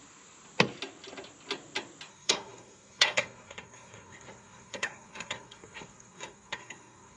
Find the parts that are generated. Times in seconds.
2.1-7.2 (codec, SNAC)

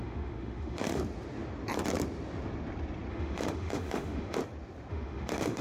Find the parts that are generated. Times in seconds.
0.0-1.0 (autoencoder, DAC-VAE); 3.1-4.4; 4.9-5.6

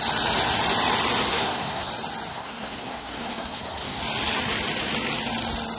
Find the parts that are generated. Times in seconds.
1.3-1.9 (codec, SNAC); 2.3-4.0

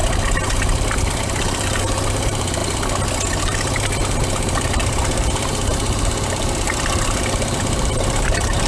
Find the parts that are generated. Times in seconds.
0.9-2.6 (vocoder, BigVGAN v2); 3.4-8.7

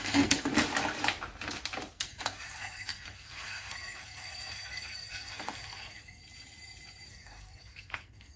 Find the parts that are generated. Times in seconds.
0.0-0.5 (codec, SNAC); 1.9-6.2; 7.1-8.4

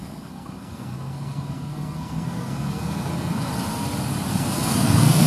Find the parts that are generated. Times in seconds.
0.0-3.5 (codec, SNAC); 4.3-5.3